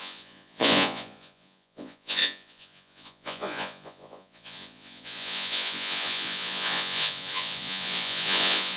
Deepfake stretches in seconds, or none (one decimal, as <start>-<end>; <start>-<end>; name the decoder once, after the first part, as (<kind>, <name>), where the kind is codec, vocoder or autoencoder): 0.0-8.8 (vocoder, Vocos)